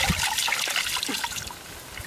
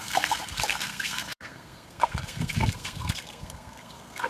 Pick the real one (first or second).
first